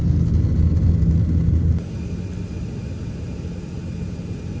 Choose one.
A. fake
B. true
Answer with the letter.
B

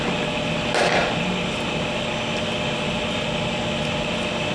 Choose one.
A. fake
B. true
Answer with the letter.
B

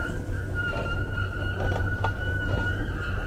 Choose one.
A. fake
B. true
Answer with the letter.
B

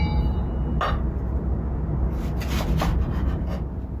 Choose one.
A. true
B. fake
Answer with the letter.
A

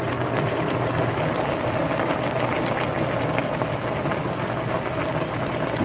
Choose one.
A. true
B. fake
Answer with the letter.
A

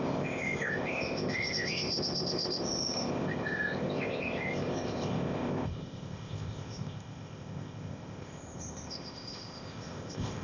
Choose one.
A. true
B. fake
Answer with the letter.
B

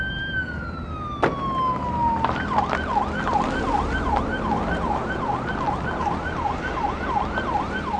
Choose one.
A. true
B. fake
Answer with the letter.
A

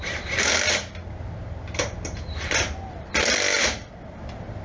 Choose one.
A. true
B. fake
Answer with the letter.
B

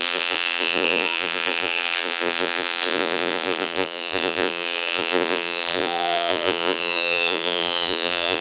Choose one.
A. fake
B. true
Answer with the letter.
A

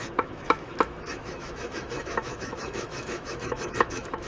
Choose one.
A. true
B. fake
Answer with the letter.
B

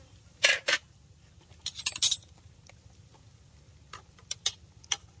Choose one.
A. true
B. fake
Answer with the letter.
A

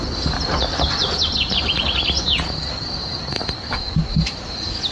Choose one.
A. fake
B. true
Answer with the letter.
B